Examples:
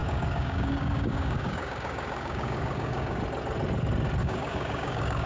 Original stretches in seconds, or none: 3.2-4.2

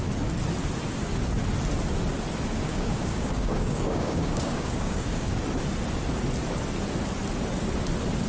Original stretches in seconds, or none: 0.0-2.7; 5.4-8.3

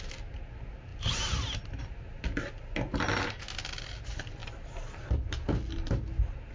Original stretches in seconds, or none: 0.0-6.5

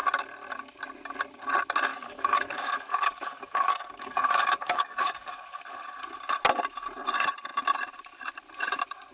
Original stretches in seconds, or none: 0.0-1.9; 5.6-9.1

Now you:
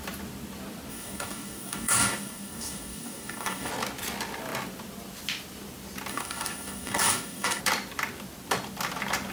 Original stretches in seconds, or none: 0.0-0.9; 3.7-6.1; 7.6-9.3

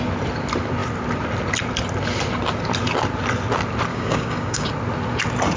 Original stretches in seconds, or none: 0.0-3.9; 4.7-5.6

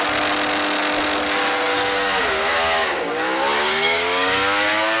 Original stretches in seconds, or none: 0.0-1.7

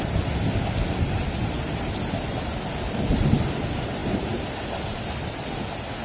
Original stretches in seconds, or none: 0.0-6.0